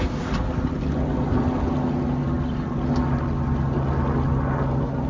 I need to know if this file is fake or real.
real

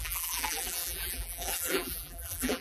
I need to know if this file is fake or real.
fake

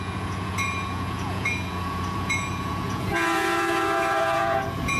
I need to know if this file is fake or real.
fake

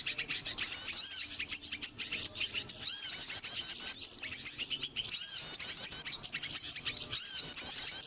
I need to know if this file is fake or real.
real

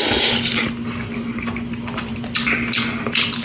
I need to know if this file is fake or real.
real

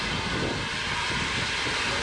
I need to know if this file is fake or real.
real